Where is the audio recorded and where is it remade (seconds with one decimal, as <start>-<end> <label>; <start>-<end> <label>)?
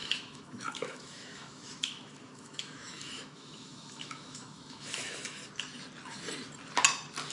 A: 0.0-5.4 remade; 5.4-7.3 recorded